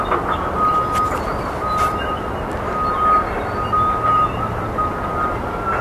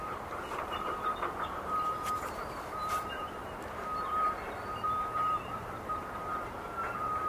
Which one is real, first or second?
first